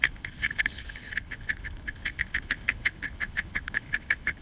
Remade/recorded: remade